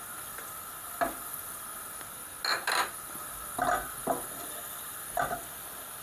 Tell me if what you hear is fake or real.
real